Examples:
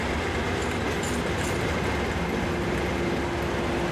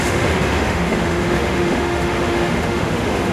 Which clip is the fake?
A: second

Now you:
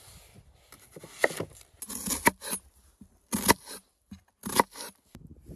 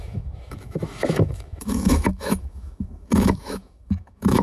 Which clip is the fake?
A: second